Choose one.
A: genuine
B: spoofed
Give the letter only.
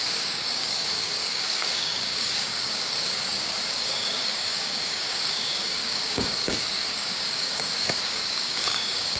B